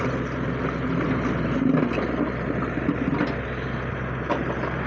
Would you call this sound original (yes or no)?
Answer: yes